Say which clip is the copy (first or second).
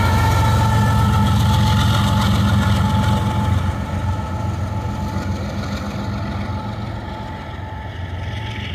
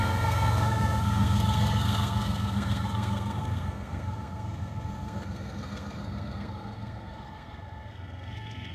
second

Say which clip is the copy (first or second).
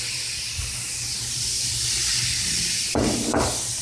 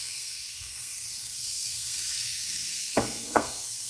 second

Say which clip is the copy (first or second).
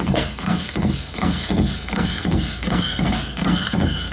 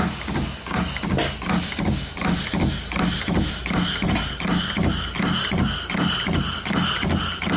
first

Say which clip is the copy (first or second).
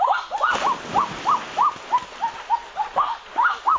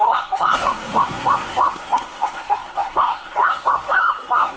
second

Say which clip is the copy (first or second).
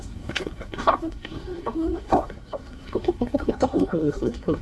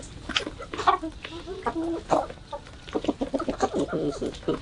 first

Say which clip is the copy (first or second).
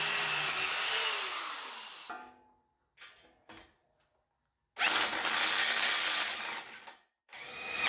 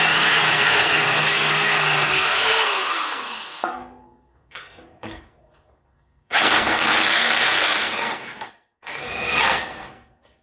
second